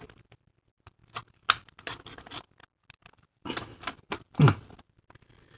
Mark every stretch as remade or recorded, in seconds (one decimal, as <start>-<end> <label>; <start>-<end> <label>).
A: 0.0-5.6 recorded